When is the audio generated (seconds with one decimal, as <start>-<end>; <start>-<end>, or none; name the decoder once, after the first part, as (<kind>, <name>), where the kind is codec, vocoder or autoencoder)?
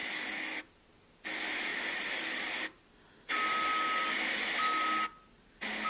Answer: 0.0-0.6 (codec, DAC)